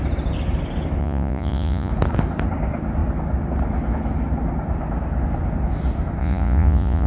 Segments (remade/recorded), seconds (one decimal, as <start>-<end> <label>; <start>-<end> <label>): 0.0-1.0 recorded; 1.0-1.9 remade; 1.9-6.2 recorded; 6.2-7.1 remade